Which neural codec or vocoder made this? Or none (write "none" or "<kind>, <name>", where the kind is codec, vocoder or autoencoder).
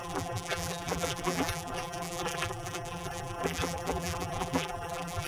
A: vocoder, BigVGAN v2